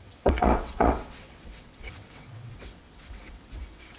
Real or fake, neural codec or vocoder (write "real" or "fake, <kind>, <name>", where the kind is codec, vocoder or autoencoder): fake, vocoder, WaveNeXt